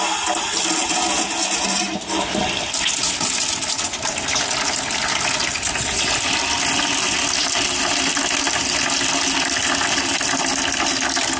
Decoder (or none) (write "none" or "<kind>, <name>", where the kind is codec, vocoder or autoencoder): none